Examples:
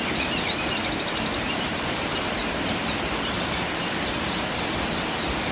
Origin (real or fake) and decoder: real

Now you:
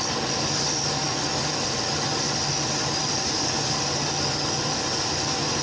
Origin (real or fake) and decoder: real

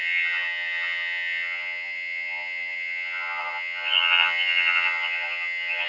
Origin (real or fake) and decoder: fake, vocoder, HiFi-GAN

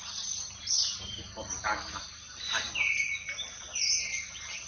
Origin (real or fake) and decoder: real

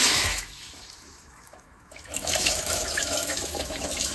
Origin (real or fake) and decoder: fake, autoencoder, DAC-VAE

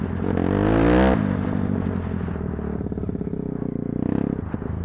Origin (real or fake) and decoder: real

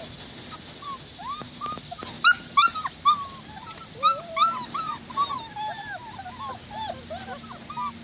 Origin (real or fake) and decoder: real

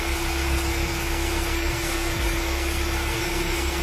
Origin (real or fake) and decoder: fake, codec, SNAC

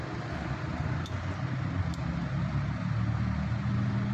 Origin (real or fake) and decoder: real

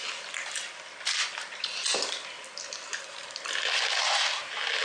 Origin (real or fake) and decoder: real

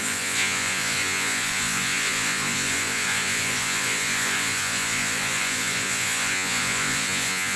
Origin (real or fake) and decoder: fake, vocoder, Vocos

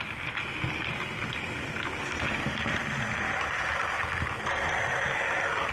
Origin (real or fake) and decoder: real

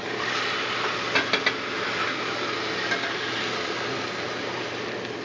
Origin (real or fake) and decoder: real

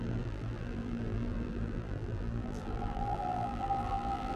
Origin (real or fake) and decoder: fake, vocoder, BigVGAN v2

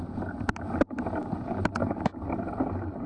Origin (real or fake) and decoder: fake, vocoder, BigVGAN v2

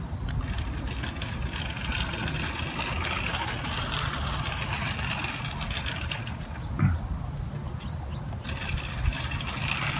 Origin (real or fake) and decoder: real